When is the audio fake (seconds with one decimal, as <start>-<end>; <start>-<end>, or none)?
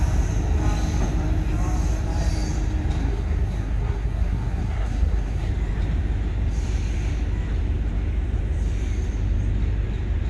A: 3.0-5.5